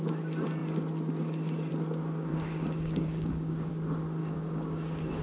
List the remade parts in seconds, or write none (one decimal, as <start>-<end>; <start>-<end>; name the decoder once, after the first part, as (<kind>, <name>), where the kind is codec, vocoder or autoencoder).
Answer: 2.3-3.7 (codec, DAC); 4.2-5.2